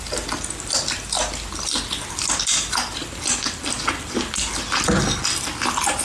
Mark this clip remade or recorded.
recorded